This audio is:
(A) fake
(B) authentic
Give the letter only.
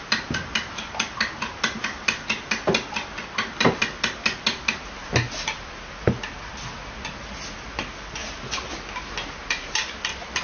B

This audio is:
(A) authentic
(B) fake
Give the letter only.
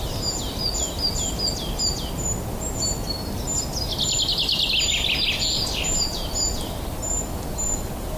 A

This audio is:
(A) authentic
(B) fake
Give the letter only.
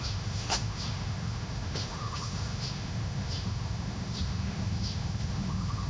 B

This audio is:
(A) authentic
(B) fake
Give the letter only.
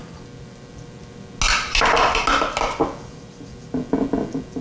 A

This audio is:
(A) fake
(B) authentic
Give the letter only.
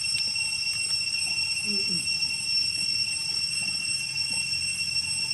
B